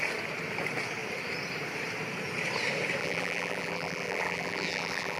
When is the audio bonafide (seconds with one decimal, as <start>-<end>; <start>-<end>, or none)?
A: 0.0-3.0